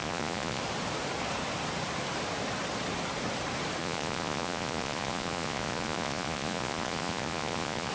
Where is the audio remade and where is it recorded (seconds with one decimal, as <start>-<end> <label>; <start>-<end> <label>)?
0.0-0.6 remade; 0.6-3.8 recorded; 3.8-7.9 remade